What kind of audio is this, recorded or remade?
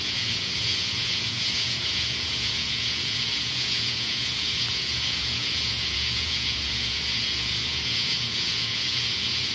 remade